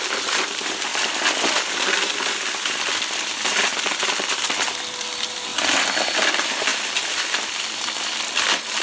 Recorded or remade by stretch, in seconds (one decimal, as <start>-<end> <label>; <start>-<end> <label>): 0.0-5.5 remade; 5.5-6.3 recorded; 6.3-6.7 remade; 6.7-7.7 recorded; 7.7-8.8 remade

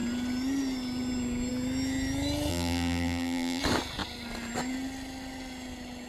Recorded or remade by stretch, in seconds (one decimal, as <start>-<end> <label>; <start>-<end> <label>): 0.0-2.5 recorded; 2.5-3.6 remade; 3.6-6.1 recorded

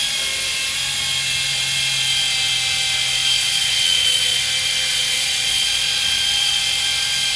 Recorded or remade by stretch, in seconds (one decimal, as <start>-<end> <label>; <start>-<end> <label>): 0.0-3.4 recorded; 3.4-4.4 remade; 4.4-4.9 recorded; 4.9-6.6 remade; 6.6-7.4 recorded

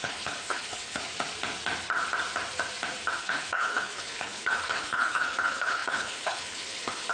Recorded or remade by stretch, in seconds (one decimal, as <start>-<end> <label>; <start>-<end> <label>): 0.0-1.0 remade; 1.0-3.2 recorded; 3.2-7.1 remade

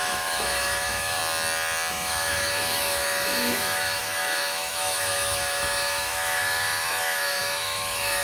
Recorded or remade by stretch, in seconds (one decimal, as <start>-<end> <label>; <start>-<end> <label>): 0.0-1.2 remade; 1.2-1.9 recorded; 1.9-8.2 remade

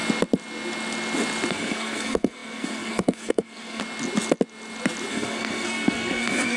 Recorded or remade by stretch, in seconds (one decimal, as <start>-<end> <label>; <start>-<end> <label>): 0.0-1.5 recorded; 1.5-3.8 remade; 3.8-5.1 recorded; 5.1-6.6 remade

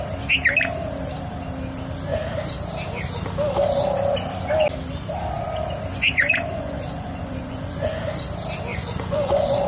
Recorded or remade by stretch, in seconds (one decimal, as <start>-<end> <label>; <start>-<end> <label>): 0.0-5.9 recorded; 5.9-8.0 remade; 8.0-8.7 recorded; 8.7-9.7 remade